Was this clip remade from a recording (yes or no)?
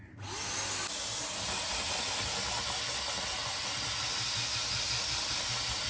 no